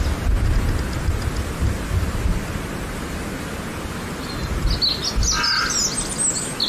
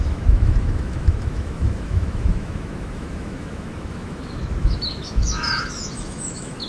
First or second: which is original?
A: first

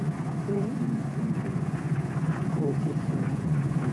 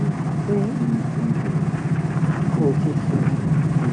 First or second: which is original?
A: second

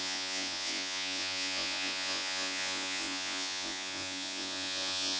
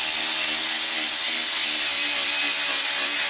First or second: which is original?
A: second